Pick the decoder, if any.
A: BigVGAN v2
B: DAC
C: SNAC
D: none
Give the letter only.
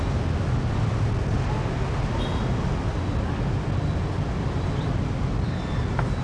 D